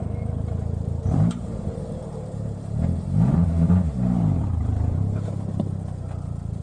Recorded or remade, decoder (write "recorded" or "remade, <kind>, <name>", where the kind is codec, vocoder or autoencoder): remade, vocoder, BigVGAN v2